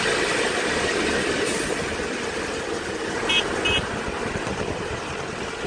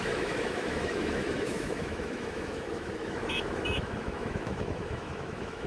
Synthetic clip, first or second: second